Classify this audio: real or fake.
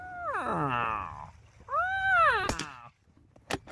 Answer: real